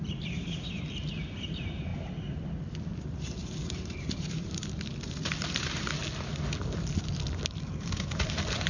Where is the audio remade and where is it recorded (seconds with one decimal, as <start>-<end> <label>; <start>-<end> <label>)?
0.0-1.9 remade; 1.9-2.6 recorded; 2.6-6.0 remade; 6.0-7.5 recorded; 7.5-8.7 remade